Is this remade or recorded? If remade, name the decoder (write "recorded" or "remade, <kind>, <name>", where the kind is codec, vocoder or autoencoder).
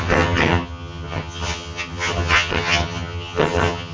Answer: remade, vocoder, HiFi-GAN